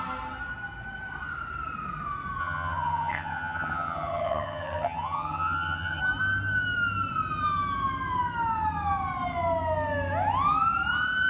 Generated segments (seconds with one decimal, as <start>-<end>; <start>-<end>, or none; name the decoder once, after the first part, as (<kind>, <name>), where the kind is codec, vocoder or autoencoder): 2.4-6.0 (vocoder, HiFi-GAN)